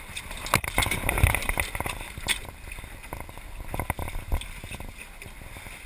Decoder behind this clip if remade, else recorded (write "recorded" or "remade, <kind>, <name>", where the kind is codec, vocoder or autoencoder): recorded